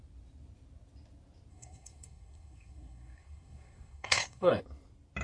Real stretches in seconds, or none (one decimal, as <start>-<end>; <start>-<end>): 0.0-1.5; 4.6-5.2